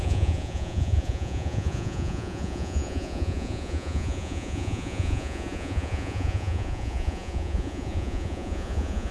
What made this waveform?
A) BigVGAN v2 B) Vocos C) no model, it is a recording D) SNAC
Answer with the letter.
B